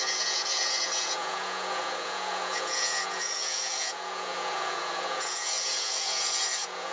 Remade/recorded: remade